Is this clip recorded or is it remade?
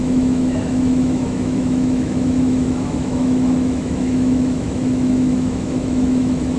remade